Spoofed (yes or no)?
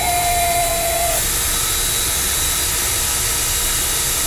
no